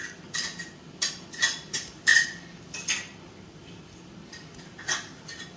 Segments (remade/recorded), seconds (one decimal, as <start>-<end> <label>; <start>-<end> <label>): 0.0-5.6 remade